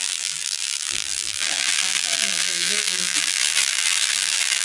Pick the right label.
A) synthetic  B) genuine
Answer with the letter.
A